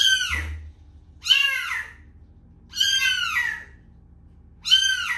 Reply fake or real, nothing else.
real